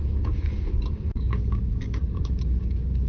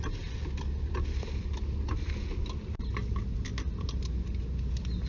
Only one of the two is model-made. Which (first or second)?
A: first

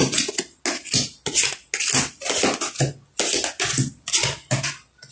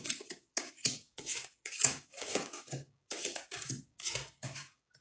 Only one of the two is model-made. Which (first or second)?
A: second